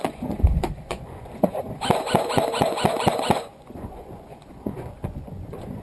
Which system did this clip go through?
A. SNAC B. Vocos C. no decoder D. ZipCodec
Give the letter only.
B